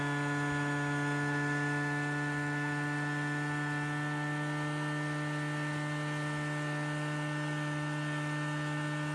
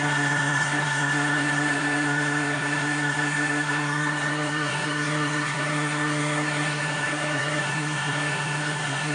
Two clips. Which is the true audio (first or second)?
first